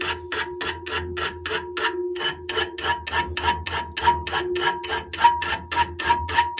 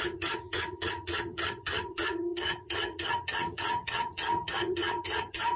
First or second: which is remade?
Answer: second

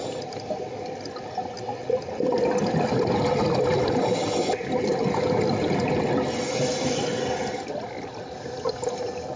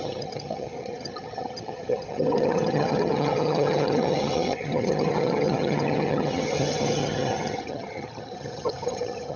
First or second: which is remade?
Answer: second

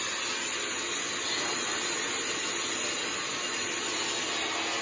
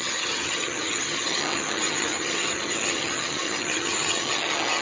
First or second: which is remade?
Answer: second